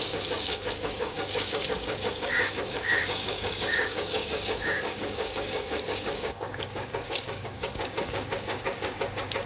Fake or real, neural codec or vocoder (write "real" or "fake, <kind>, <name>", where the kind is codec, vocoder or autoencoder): fake, codec, DAC